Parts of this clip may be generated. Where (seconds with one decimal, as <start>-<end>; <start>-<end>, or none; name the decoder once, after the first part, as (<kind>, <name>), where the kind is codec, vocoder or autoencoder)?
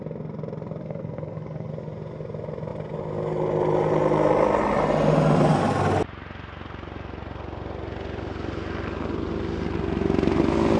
0.8-1.7 (codec, SNAC)